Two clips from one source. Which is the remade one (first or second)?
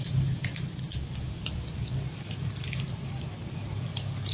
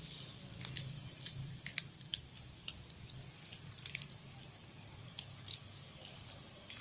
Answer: second